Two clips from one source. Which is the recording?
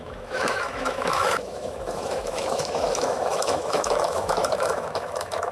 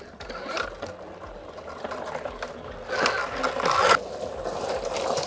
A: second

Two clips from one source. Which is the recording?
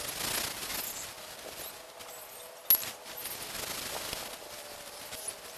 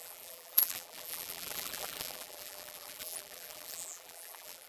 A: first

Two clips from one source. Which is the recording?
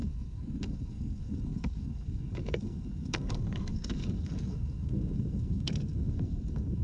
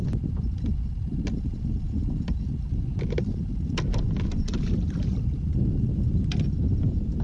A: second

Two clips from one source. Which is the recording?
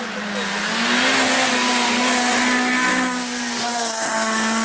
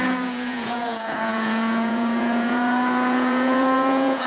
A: first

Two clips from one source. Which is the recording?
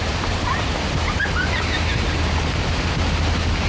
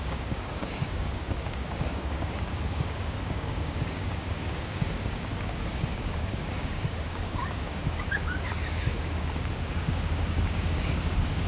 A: first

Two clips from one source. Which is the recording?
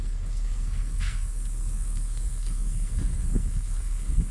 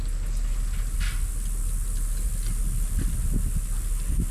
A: second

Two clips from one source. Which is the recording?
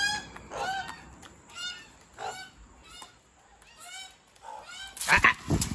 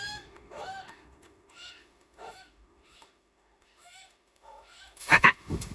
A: first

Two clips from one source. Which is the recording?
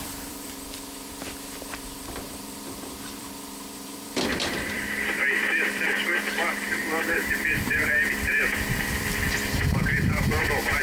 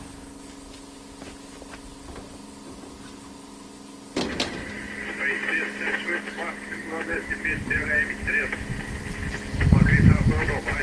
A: second